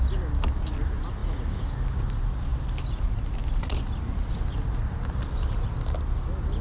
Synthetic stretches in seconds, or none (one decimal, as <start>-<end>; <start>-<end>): none